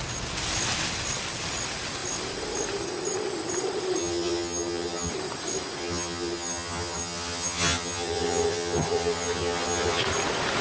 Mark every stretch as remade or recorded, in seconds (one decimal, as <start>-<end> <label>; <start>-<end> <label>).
0.0-4.0 recorded; 4.0-5.1 remade; 5.1-5.8 recorded; 5.8-10.0 remade; 10.0-10.6 recorded